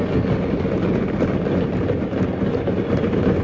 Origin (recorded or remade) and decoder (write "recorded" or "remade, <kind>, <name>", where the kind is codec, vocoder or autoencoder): recorded